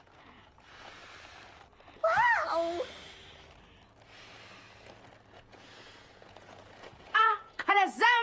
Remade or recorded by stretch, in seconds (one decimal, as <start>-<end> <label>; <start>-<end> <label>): 0.0-1.0 remade; 1.0-5.3 recorded; 5.3-8.2 remade

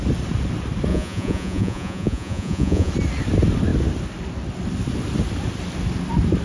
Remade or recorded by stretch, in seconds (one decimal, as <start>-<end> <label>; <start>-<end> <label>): 0.0-0.9 recorded; 0.9-2.9 remade; 2.9-6.4 recorded